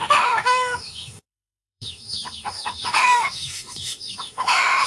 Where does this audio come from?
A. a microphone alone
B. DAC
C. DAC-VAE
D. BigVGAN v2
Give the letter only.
C